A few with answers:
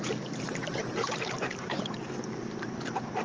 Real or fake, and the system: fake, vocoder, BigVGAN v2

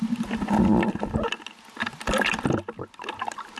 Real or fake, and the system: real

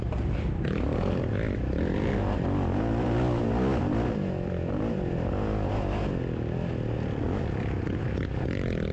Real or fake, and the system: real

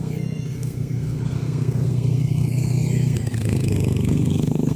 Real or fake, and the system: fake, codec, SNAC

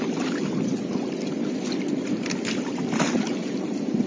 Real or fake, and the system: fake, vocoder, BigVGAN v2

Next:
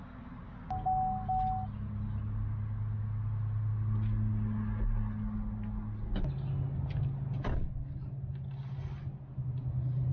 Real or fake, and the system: real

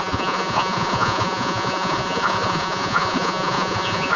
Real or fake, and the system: fake, vocoder, Vocos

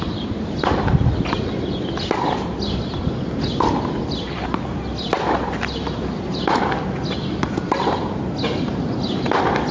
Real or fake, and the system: real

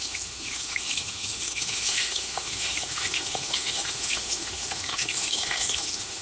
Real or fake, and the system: fake, autoencoder, DAC-VAE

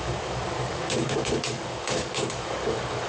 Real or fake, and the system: fake, codec, DAC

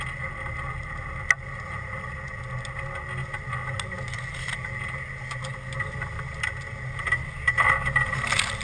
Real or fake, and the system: real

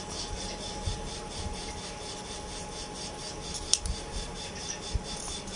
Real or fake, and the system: real